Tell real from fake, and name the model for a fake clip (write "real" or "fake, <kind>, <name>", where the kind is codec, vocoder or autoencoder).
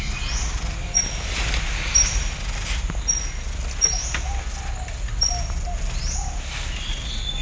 real